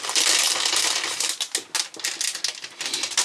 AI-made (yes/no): no